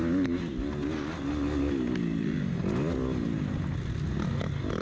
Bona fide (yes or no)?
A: yes